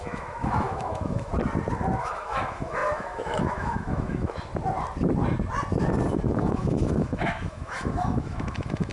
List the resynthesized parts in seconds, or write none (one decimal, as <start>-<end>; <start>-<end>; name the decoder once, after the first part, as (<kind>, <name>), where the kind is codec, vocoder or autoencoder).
0.0-1.3 (autoencoder, DAC-VAE); 2.0-4.5; 6.3-8.9